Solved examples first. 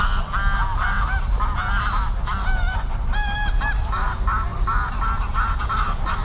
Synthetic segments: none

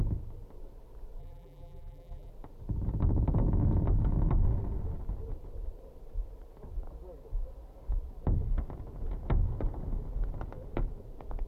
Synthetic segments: 1.2-2.3 (vocoder, BigVGAN v2)